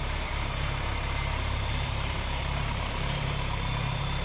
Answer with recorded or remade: remade